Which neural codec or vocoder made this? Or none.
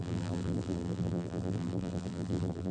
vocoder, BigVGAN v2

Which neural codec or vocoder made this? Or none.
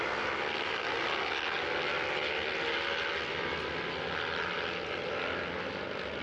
none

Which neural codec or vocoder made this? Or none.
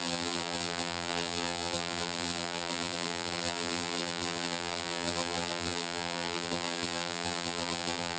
vocoder, BigVGAN v2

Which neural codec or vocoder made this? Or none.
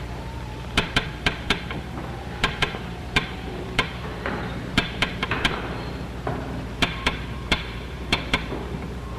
vocoder, BigVGAN v2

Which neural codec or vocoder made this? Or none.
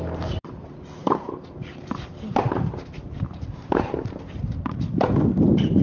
vocoder, BigVGAN v2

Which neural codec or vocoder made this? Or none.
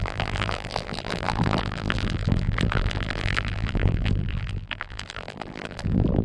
vocoder, BigVGAN v2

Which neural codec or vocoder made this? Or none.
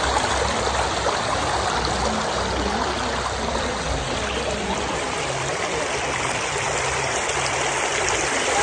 none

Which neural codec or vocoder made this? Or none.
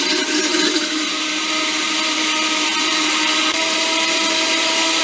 vocoder, BigVGAN v2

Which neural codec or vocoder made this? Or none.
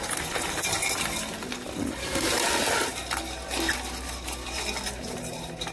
none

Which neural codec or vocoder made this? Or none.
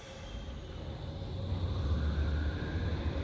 none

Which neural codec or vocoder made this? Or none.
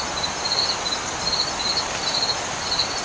none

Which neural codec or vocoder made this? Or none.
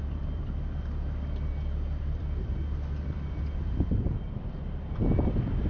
vocoder, BigVGAN v2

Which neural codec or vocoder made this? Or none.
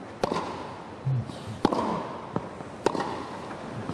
none